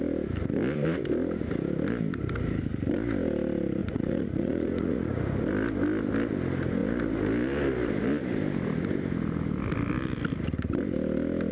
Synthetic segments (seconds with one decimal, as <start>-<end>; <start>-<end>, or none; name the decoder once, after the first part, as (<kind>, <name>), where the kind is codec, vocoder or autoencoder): 3.8-5.2 (vocoder, Vocos)